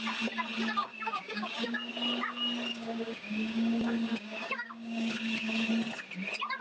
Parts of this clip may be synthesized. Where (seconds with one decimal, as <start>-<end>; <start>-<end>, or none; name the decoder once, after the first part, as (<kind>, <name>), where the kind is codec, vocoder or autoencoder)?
0.9-1.9 (codec, DAC); 2.7-5.7